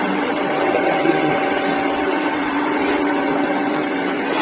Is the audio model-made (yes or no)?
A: yes